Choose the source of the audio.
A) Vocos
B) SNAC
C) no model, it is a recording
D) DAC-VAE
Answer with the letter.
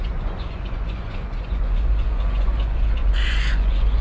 A